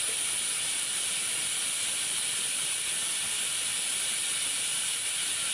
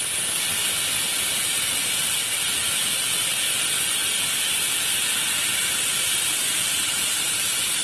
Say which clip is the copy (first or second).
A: first